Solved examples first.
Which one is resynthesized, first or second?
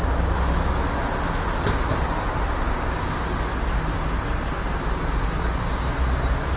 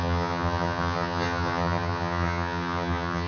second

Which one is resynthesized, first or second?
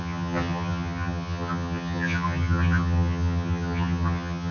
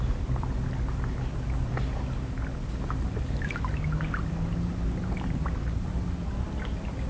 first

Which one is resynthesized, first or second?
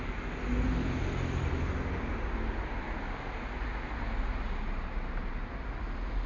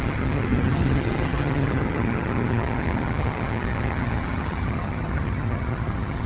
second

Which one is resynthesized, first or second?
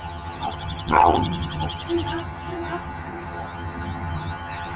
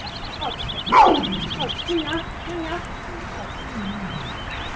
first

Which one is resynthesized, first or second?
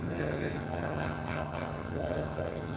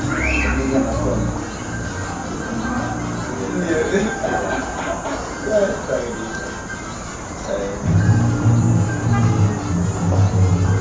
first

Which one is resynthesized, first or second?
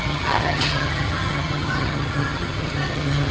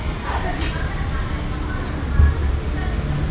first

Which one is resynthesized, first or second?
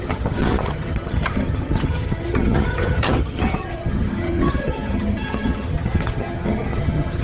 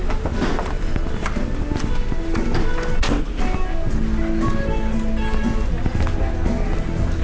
first